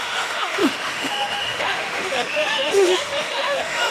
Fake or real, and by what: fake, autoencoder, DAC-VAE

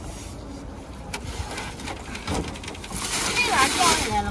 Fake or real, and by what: real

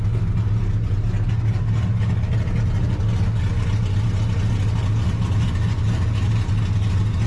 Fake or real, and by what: real